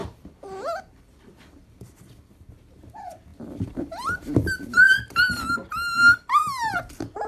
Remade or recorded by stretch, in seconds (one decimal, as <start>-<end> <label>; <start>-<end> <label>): 0.0-7.3 remade